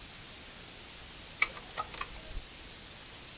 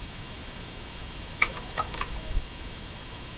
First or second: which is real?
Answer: first